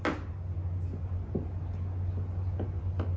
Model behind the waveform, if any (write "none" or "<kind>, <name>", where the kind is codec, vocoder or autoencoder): none